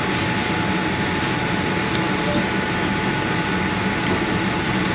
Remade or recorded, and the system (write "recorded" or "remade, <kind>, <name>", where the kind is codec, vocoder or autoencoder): recorded